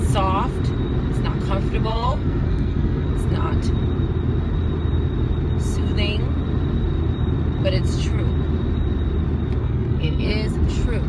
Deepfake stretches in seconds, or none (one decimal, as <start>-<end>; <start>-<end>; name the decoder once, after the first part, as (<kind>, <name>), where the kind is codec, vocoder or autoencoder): 1.9-3.1 (codec, SNAC); 9.6-10.3